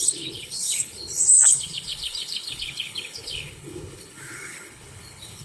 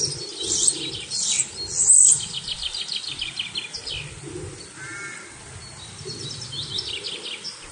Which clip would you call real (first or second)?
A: second